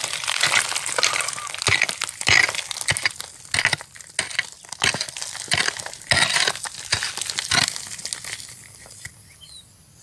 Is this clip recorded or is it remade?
recorded